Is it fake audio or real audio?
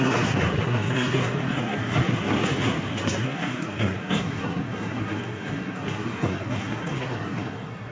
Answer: fake